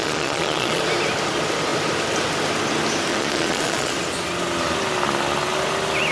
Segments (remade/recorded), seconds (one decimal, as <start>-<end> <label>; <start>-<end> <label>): 0.0-0.8 remade; 0.8-3.1 recorded; 3.1-3.9 remade; 3.9-6.1 recorded